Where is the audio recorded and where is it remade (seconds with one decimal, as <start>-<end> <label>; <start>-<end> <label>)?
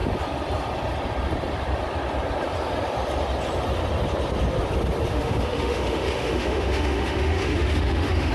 0.0-5.1 recorded; 5.1-8.3 remade